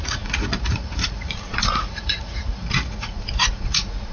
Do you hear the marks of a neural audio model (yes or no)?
yes